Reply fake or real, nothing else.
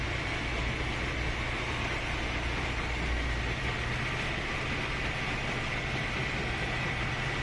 fake